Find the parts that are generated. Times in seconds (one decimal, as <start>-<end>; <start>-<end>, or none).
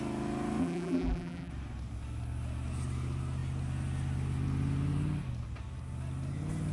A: 0.6-1.5